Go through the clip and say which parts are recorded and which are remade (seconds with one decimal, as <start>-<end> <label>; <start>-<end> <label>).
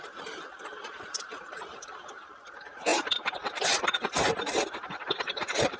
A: 0.0-5.8 remade